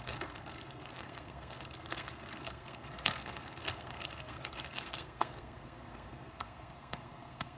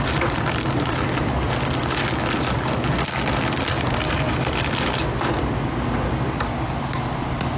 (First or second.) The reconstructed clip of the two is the first